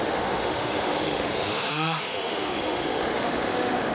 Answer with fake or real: fake